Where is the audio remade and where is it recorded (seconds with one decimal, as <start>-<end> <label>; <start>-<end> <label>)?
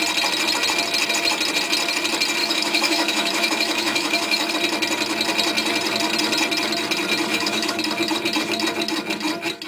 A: 0.0-2.4 recorded; 2.4-4.5 remade; 4.5-7.3 recorded; 7.3-7.8 remade; 7.8-9.7 recorded